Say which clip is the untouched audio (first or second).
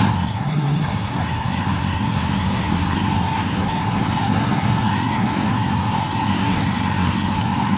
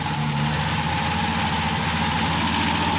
second